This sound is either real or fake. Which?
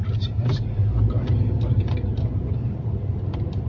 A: fake